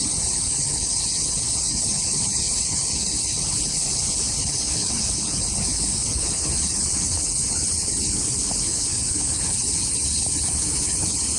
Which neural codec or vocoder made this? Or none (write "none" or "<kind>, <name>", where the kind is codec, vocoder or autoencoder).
codec, HILCodec